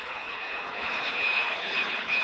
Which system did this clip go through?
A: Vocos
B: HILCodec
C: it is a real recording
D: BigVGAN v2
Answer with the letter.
B